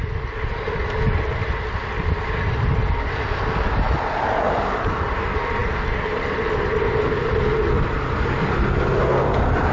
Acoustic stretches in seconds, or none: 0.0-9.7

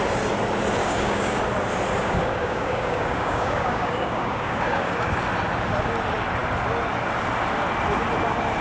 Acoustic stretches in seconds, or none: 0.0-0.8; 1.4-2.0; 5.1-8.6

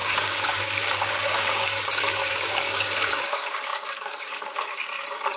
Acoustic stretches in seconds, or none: none

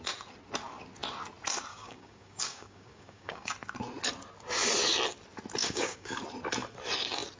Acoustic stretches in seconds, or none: 0.0-1.7; 3.5-5.6; 6.2-7.4

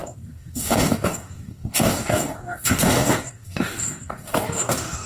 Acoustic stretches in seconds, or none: none

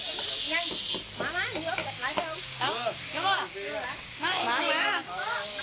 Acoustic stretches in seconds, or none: 0.0-1.8

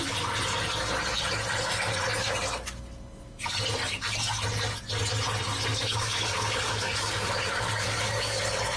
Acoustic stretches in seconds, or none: 0.0-5.7; 8.4-8.8